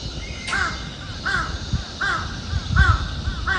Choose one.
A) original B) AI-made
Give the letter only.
A